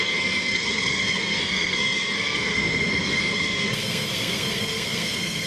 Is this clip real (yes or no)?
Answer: no